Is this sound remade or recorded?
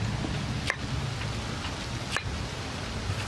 recorded